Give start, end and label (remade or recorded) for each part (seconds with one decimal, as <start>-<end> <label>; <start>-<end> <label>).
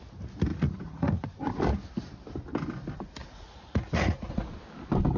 0.0-0.5 recorded; 0.5-1.3 remade; 1.3-3.2 recorded; 3.2-4.5 remade; 4.5-5.2 recorded